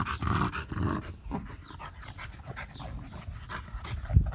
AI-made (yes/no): no